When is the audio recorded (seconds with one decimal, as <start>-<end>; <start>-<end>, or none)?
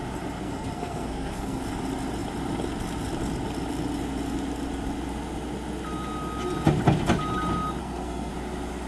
0.0-0.4; 1.6-7.8; 8.3-8.9